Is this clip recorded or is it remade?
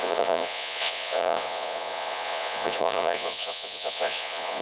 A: remade